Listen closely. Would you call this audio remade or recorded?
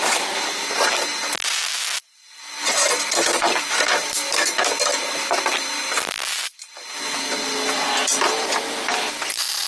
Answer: recorded